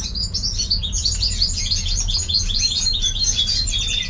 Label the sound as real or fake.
fake